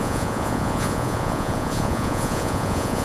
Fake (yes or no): yes